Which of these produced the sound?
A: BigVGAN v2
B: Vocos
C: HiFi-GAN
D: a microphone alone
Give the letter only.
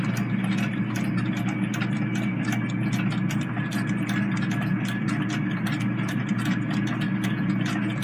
D